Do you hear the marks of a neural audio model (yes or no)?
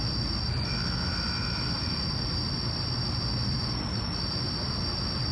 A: no